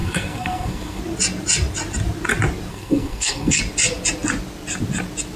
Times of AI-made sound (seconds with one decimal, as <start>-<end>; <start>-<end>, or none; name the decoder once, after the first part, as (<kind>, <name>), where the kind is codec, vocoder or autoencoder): 0.0-1.0 (codec, SNAC); 2.7-3.6